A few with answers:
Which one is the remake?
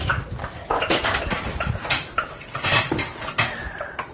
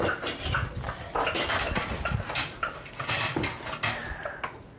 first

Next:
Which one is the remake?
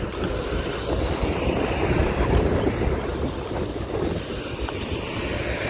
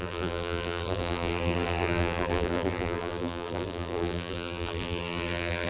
second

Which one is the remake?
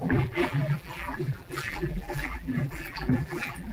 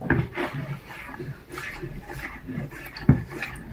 first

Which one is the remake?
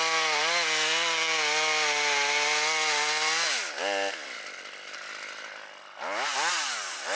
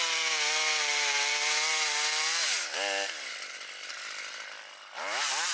second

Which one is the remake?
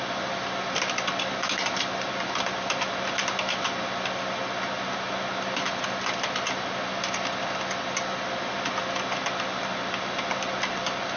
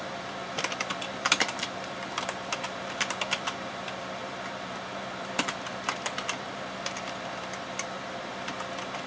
second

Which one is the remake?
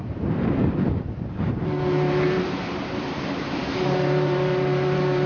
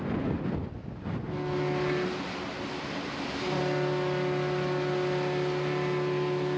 first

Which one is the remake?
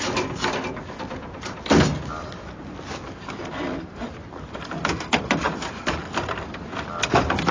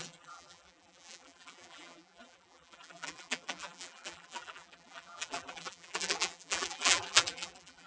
second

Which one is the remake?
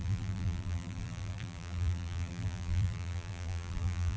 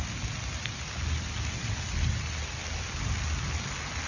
first